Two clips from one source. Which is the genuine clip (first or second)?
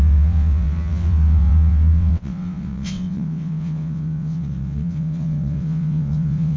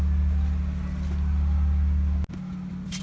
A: second